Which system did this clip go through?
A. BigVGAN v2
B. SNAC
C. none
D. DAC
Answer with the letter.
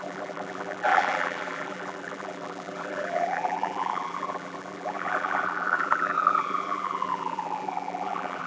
A